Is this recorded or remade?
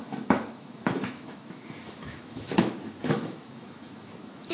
remade